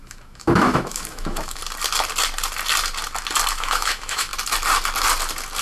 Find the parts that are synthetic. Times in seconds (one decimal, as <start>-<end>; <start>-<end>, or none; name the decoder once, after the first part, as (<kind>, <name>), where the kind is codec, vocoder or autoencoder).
0.0-1.6 (autoencoder, DAC-VAE); 3.5-4.3